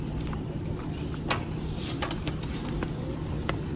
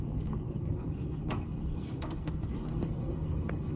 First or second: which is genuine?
first